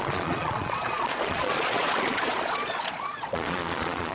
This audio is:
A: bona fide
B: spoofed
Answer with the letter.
B